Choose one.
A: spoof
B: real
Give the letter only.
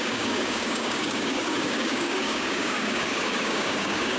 A